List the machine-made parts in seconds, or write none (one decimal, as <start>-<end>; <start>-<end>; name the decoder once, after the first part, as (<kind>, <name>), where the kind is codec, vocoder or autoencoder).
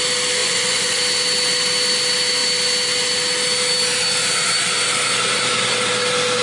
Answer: 0.4-1.0 (vocoder, Vocos)